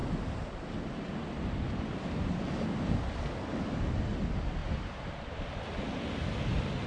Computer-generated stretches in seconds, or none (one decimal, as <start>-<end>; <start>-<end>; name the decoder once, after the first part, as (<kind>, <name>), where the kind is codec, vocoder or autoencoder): none

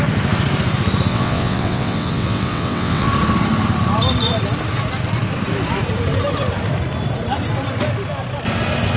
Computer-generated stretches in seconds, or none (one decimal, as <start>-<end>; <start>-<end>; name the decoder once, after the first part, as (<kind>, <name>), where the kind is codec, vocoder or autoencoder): 1.1-3.1 (vocoder, WaveNeXt)

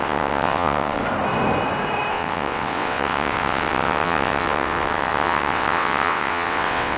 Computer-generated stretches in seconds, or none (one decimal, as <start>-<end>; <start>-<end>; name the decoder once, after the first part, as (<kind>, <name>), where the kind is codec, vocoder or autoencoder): 0.0-1.0 (vocoder, WaveNeXt); 2.1-7.0

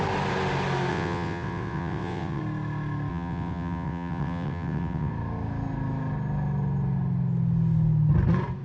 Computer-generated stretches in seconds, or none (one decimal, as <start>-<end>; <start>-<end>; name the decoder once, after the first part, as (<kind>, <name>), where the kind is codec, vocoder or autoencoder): 0.9-2.4 (vocoder, WaveNeXt); 3.1-5.1

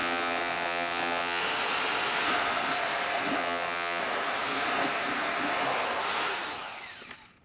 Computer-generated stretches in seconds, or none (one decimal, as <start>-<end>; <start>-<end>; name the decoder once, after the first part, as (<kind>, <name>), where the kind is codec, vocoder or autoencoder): 0.0-1.4 (vocoder, WaveNeXt); 3.4-4.0

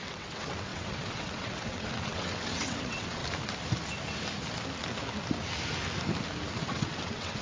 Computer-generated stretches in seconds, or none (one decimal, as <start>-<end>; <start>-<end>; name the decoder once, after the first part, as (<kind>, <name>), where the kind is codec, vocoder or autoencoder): 0.0-3.2 (vocoder, WaveNeXt); 6.5-7.4

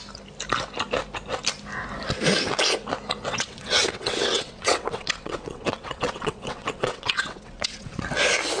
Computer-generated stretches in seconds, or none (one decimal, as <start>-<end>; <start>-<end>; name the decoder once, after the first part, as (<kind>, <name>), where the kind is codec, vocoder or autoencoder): 3.3-8.0 (vocoder, WaveNeXt)